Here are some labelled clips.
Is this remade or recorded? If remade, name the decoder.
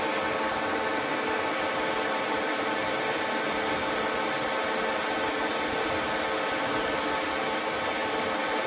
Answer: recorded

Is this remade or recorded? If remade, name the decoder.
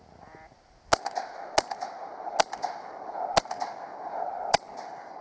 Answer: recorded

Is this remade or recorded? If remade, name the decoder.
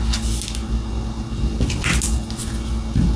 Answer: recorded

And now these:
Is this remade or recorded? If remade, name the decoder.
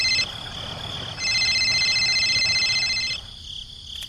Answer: recorded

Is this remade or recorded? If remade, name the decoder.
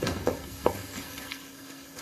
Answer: remade, codec, SNAC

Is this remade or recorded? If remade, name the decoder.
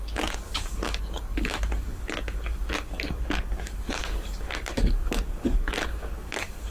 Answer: remade, codec, DAC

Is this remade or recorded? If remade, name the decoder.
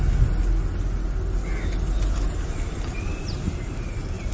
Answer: recorded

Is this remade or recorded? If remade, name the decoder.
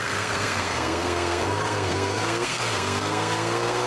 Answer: remade, codec, SNAC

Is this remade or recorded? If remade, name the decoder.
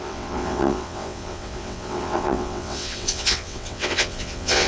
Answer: remade, vocoder, WaveNeXt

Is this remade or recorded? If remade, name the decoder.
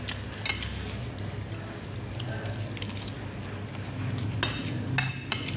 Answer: recorded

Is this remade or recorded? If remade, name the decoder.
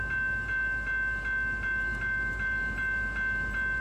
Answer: recorded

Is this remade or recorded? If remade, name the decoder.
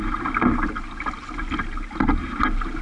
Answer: recorded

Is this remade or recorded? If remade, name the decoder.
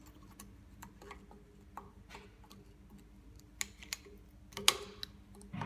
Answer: recorded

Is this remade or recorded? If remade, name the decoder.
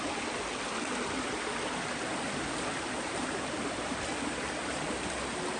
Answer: recorded